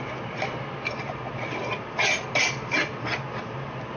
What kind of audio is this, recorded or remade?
recorded